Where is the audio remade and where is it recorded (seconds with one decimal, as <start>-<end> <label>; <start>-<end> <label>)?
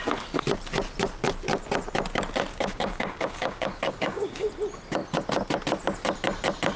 0.0-2.5 recorded; 2.5-4.5 remade; 4.5-6.8 recorded